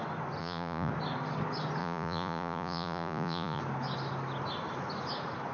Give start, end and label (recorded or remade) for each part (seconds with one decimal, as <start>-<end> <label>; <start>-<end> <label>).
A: 0.0-0.4 recorded; 0.4-0.9 remade; 0.9-1.8 recorded; 1.8-3.6 remade; 3.6-5.5 recorded